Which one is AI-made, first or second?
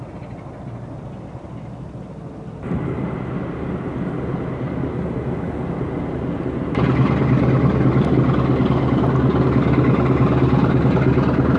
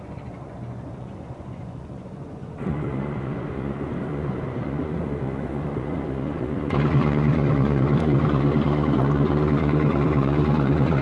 second